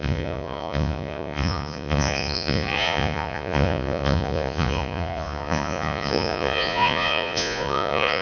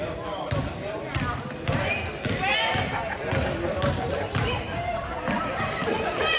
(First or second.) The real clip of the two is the second